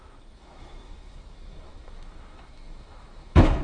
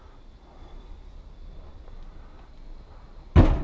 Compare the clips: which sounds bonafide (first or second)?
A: second